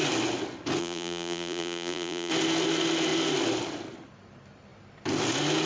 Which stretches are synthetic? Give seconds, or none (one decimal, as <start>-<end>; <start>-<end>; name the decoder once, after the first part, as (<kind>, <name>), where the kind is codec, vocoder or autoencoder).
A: 0.8-2.3 (vocoder, BigVGAN v2)